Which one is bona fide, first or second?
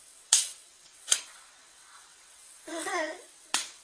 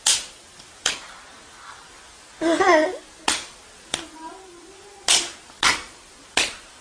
second